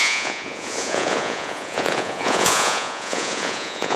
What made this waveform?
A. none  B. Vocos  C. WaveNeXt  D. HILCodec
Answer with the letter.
B